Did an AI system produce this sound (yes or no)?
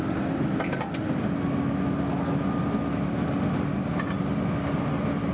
no